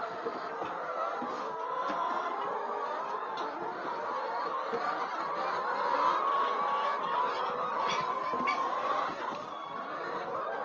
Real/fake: real